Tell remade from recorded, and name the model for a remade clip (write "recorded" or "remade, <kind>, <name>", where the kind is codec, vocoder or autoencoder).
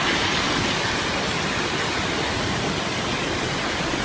recorded